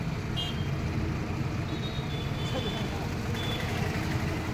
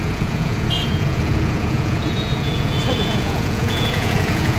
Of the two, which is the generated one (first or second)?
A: second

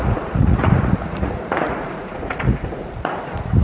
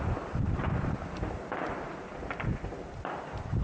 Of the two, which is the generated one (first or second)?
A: first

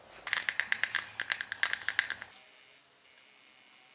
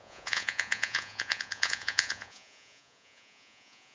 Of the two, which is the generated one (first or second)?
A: second